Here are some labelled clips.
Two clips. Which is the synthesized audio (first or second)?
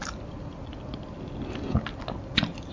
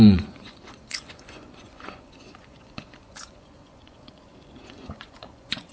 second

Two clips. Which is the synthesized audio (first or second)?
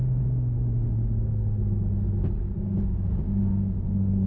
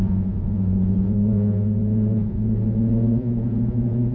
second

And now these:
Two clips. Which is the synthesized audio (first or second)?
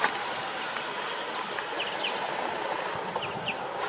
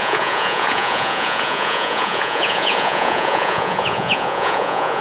second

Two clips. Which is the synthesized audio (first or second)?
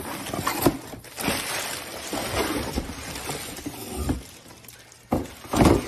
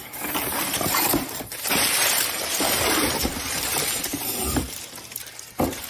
second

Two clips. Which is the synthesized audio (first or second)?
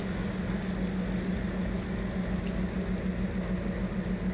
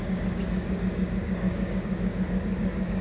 second